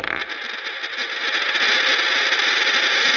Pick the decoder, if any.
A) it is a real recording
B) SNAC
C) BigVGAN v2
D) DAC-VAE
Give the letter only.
A